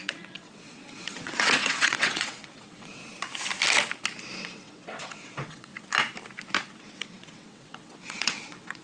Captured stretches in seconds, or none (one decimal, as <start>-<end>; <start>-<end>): 3.0-4.4; 5.7-6.8